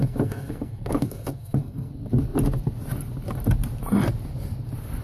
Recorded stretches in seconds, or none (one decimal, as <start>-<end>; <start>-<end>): 1.9-5.0